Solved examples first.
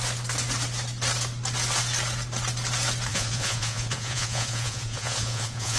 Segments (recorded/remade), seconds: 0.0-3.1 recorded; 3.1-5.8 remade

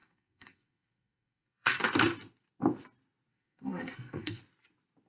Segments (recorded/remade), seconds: 0.0-1.8 remade; 1.8-3.3 recorded; 3.3-4.4 remade; 4.4-5.1 recorded

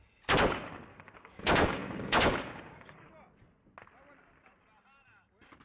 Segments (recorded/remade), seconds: 0.0-0.9 recorded; 0.9-3.1 remade; 3.1-5.6 recorded